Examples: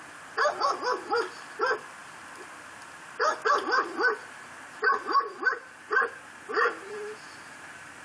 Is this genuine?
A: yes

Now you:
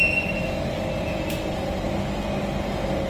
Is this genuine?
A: yes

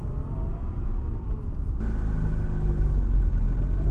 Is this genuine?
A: yes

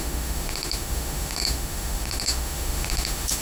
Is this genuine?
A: no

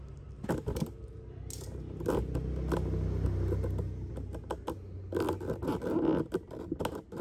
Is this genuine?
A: yes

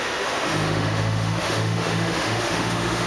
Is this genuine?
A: no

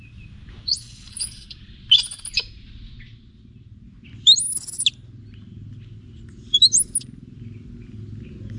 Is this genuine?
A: yes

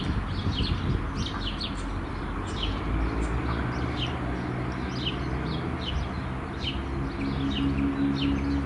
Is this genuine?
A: yes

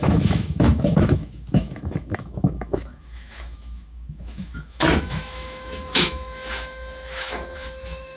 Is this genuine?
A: no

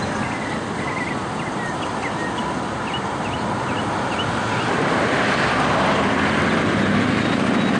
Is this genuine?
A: yes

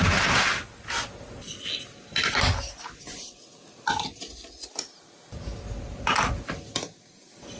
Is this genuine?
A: yes